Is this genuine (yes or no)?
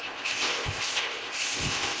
no